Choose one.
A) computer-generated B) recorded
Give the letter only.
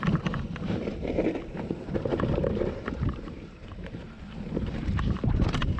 A